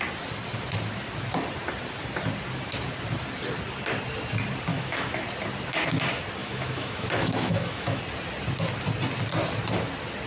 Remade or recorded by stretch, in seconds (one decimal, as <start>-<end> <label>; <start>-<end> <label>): 0.0-4.7 recorded; 4.7-5.2 remade; 5.2-6.4 recorded; 6.4-8.0 remade; 8.0-10.3 recorded